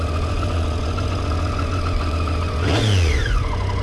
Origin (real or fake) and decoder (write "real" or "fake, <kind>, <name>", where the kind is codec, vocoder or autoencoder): fake, vocoder, Vocos